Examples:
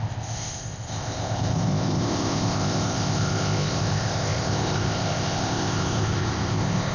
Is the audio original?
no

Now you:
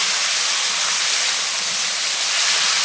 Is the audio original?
yes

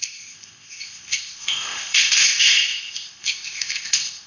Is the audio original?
no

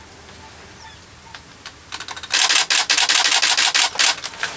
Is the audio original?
yes